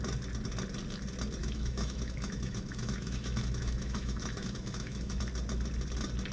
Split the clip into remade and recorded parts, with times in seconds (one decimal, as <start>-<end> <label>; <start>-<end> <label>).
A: 0.0-1.4 recorded; 1.4-5.2 remade; 5.2-6.3 recorded